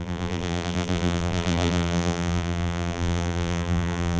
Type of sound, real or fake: fake